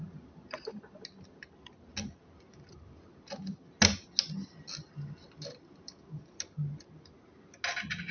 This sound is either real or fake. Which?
real